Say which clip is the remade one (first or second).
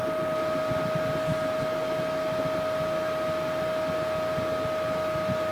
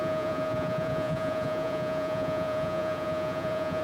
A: second